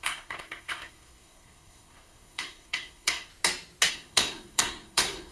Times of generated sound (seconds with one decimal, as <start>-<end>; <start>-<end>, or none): 0.0-3.3; 3.9-5.3